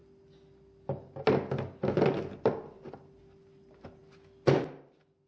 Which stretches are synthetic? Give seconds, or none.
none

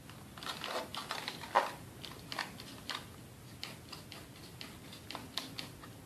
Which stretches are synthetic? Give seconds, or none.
none

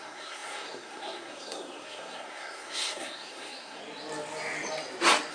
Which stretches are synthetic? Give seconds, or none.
0.0-3.8 (codec, SNAC)

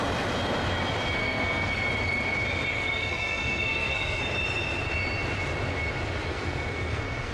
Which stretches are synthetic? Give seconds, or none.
1.2-1.9 (codec, SNAC); 2.7-4.2; 6.3-7.3

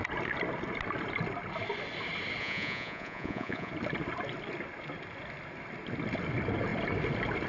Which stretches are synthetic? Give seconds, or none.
2.4-3.7 (vocoder, Vocos)